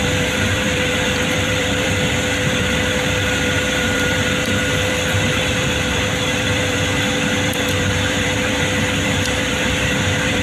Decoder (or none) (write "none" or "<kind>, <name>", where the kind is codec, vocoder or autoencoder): vocoder, BigVGAN v2